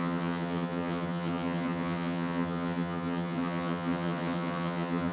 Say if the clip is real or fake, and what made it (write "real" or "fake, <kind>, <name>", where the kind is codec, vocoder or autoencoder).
fake, vocoder, HiFi-GAN